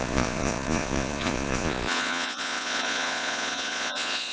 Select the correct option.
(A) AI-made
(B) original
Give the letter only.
A